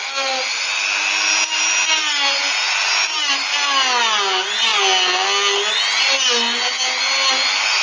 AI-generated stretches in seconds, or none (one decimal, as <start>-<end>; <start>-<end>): none